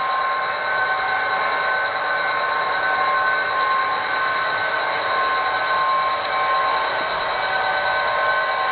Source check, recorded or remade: recorded